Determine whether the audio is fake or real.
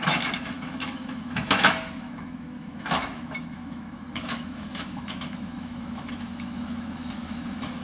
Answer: fake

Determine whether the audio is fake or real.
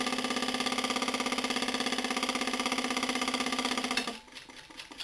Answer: real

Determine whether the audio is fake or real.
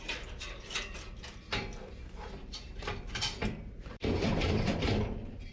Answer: fake